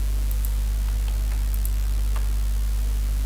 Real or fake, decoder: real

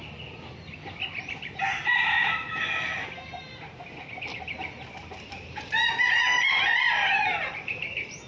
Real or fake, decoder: real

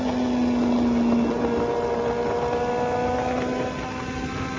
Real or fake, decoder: real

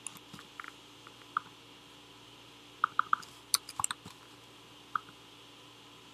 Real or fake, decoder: real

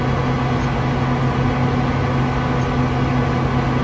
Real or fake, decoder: real